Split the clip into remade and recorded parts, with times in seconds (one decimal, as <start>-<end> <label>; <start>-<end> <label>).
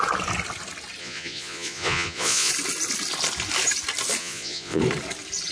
0.0-1.0 recorded; 1.0-2.5 remade; 2.5-4.2 recorded; 4.2-4.8 remade; 4.8-5.5 recorded